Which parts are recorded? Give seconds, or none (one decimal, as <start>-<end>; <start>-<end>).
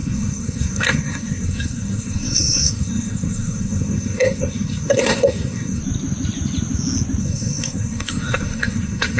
5.8-7.2